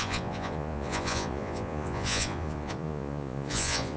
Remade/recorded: remade